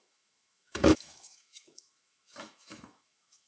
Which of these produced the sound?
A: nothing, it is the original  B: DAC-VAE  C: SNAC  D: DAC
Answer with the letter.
B